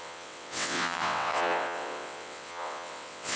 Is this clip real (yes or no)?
no